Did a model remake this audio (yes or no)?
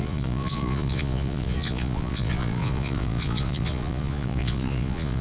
yes